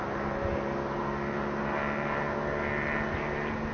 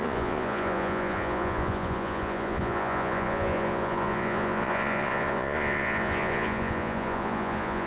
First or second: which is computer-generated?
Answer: second